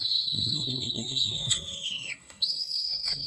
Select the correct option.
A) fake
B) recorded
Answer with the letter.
A